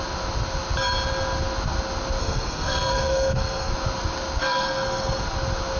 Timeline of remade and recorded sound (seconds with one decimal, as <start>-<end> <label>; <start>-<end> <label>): 0.0-2.2 recorded; 2.2-3.7 remade; 3.7-4.4 recorded; 4.4-5.2 remade; 5.2-5.8 recorded